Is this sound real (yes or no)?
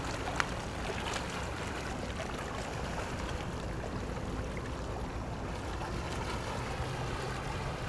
yes